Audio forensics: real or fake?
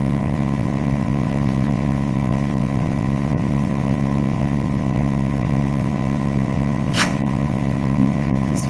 fake